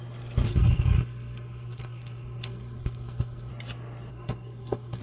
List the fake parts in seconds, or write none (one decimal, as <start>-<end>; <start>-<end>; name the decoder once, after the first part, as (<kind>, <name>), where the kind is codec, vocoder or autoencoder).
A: 0.5-3.5 (codec, SNAC); 4.1-5.0